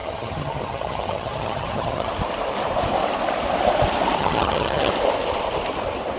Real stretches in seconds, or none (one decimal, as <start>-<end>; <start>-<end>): 2.1-4.2; 4.9-6.2